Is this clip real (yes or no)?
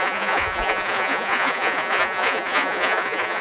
no